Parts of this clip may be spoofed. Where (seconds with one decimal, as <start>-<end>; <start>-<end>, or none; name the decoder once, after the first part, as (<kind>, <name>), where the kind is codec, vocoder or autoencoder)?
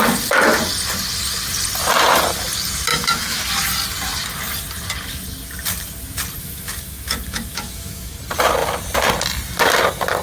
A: 2.9-3.5 (autoencoder, DAC-VAE); 6.4-8.2